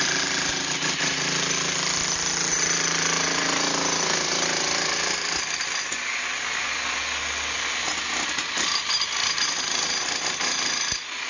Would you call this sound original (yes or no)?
yes